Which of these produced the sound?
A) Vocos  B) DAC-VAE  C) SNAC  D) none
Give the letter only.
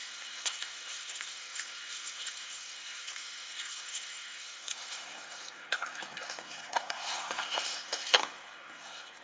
C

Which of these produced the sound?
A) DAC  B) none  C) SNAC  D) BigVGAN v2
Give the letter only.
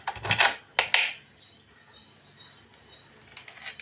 B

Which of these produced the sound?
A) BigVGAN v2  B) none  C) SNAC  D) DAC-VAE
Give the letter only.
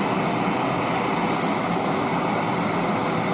B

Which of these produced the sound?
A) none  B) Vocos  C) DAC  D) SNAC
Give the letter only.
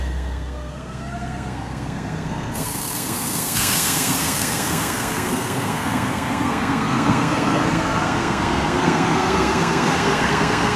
D